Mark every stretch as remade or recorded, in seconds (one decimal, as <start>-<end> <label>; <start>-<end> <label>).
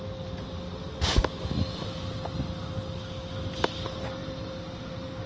0.0-5.3 recorded